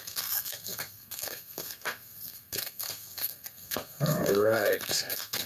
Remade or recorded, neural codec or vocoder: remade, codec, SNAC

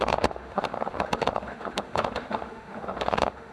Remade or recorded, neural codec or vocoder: remade, autoencoder, DAC-VAE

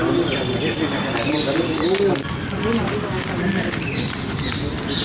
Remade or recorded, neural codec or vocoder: recorded